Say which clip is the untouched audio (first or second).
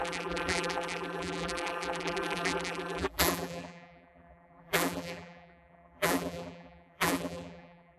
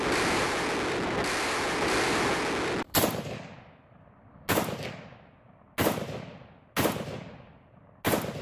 second